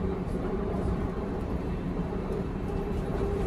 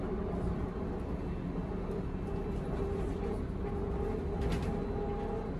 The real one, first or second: second